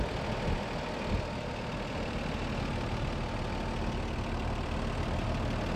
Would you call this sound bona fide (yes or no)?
yes